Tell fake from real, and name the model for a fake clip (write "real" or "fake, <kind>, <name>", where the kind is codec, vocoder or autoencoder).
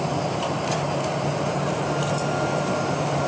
real